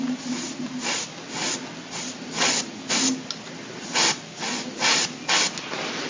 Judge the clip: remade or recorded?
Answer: recorded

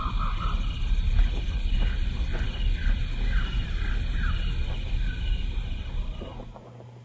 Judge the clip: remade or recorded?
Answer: recorded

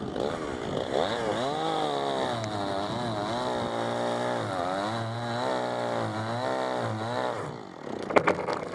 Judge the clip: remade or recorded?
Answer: recorded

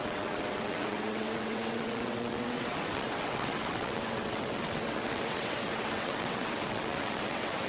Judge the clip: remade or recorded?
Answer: remade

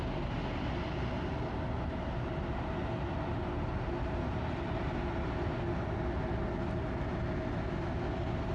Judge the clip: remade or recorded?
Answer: recorded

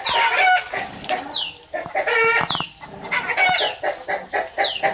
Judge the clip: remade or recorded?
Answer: recorded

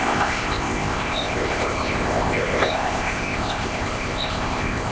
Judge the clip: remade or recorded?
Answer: remade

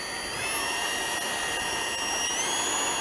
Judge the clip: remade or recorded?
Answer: recorded